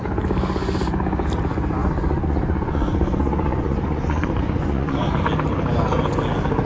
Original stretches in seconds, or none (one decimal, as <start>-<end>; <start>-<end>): 0.0-1.8; 5.2-6.7